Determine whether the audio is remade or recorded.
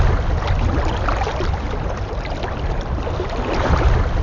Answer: recorded